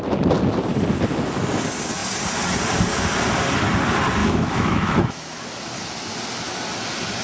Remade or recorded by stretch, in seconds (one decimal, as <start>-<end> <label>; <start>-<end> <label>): 0.0-4.2 recorded; 4.2-5.4 remade; 5.4-7.2 recorded